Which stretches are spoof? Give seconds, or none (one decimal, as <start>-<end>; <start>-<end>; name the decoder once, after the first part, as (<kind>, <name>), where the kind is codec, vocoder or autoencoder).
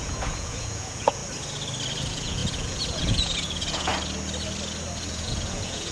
0.0-1.2 (vocoder, Vocos); 2.0-3.9; 5.1-5.9